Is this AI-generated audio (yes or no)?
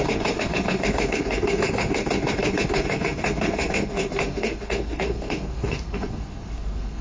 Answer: yes